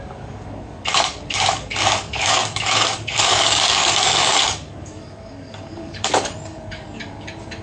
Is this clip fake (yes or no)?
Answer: yes